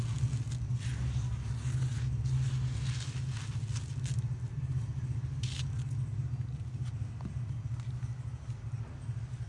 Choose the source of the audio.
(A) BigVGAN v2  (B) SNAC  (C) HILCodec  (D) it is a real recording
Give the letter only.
D